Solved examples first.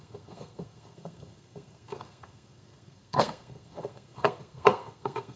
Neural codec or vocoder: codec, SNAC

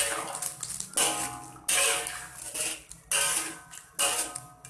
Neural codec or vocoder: none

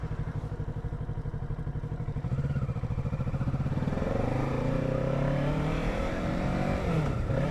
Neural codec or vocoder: vocoder, BigVGAN v2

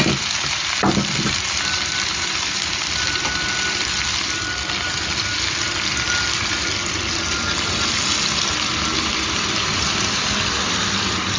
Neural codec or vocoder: none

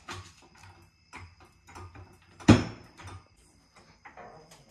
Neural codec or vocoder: vocoder, BigVGAN v2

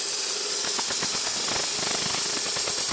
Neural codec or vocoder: none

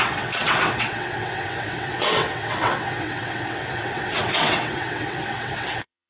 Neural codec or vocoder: vocoder, WaveNeXt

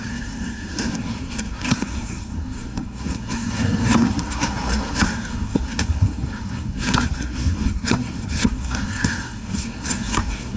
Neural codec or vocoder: codec, SNAC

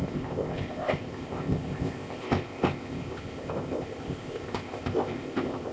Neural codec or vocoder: codec, ZipCodec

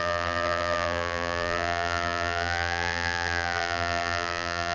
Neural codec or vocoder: vocoder, BigVGAN v2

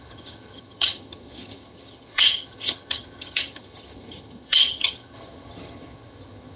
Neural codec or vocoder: vocoder, HiFi-GAN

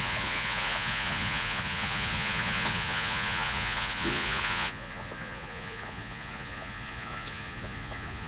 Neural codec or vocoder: vocoder, Vocos